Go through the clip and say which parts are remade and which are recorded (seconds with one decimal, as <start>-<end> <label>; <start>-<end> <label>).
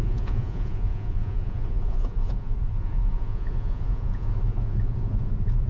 0.0-5.7 remade